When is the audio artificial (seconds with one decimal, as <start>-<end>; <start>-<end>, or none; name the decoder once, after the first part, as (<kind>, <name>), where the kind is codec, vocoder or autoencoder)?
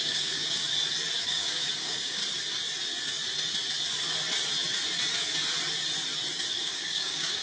0.0-0.6 (codec, DAC); 1.2-2.2; 6.6-7.4